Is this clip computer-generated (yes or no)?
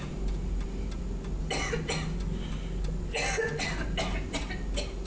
no